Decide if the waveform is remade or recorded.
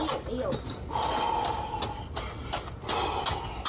recorded